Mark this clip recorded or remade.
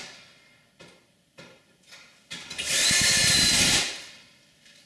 recorded